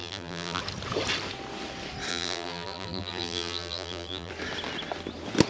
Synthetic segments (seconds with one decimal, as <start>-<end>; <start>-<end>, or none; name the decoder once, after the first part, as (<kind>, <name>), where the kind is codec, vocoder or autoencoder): 0.0-0.6 (vocoder, BigVGAN v2); 2.1-4.3